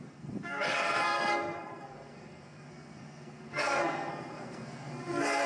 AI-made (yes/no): yes